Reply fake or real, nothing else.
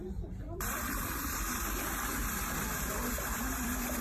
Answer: fake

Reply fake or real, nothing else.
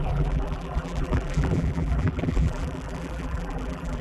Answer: fake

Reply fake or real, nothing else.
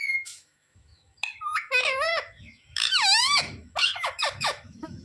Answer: fake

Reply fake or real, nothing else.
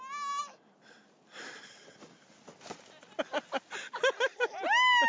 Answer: real